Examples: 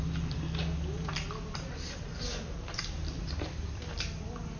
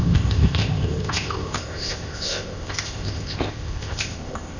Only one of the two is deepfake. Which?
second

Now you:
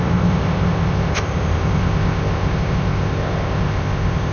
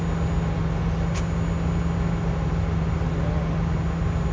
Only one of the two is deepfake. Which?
first